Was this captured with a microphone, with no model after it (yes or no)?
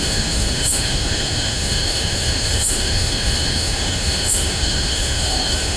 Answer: no